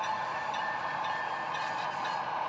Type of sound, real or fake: fake